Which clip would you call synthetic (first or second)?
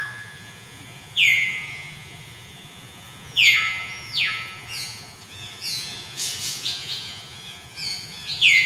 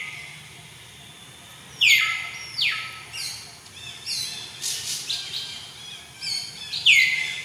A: first